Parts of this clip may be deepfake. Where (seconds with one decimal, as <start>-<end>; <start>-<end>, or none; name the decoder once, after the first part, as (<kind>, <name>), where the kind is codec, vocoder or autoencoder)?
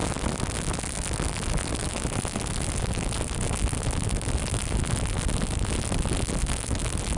none